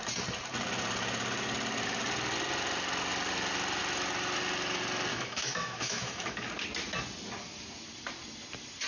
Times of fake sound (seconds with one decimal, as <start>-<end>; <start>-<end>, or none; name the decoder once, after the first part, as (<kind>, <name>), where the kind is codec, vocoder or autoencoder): 5.1-6.5 (autoencoder, DAC-VAE)

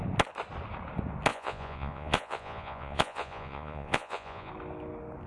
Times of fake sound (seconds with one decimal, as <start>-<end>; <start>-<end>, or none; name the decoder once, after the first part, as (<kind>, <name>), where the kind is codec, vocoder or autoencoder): 1.3-4.5 (vocoder, Vocos)

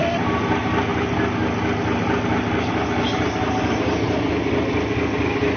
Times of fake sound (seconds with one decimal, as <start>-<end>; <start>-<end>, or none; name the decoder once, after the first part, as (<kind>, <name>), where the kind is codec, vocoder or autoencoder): none

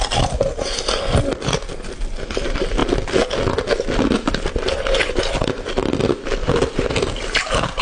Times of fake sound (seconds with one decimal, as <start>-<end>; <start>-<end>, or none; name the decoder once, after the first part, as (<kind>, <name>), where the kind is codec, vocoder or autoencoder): 6.4-7.8 (vocoder, BigVGAN v2)

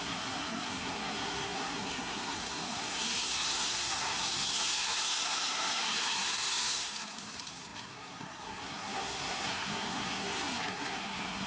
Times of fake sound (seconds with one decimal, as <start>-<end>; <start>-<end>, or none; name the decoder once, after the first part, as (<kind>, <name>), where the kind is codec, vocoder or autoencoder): 0.0-11.5 (codec, SNAC)